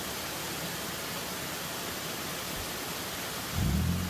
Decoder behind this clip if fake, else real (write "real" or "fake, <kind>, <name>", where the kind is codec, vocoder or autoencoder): real